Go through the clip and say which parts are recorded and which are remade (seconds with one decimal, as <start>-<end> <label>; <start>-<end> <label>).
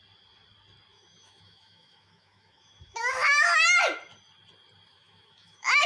0.0-0.9 recorded; 0.9-3.8 remade; 3.8-4.9 recorded; 4.9-5.9 remade